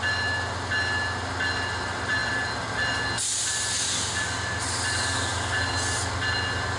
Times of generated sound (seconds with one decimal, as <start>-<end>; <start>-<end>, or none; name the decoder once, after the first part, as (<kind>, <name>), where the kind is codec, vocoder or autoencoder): none